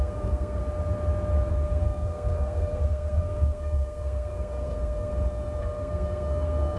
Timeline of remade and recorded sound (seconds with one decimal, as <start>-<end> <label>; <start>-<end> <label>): 0.0-0.6 remade; 0.6-1.5 recorded; 1.5-5.1 remade; 5.1-5.6 recorded; 5.6-6.8 remade